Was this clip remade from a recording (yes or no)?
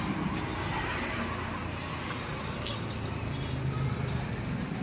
no